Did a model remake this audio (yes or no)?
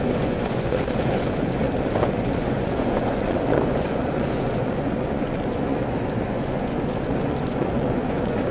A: yes